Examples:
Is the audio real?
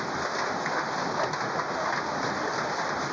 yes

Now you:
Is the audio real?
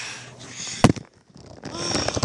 yes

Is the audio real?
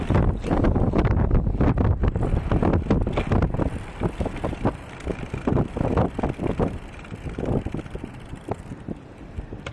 yes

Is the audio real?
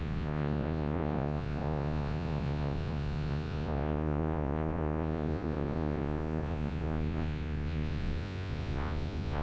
no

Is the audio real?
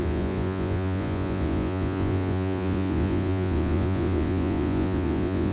no